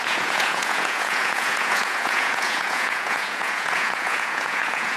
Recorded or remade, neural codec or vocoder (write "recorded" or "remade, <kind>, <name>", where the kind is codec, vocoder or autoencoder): remade, vocoder, Vocos